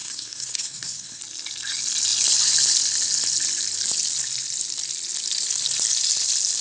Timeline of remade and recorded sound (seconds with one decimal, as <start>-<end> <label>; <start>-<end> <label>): 0.0-1.2 remade; 1.2-6.6 recorded